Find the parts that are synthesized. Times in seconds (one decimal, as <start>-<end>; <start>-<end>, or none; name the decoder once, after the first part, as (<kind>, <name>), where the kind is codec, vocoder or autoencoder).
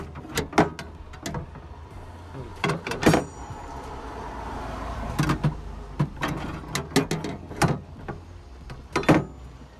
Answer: 2.5-4.3 (vocoder, BigVGAN v2)